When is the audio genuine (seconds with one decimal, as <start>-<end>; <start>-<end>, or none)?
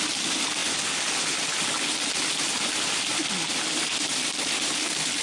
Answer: 0.6-2.4; 3.1-4.1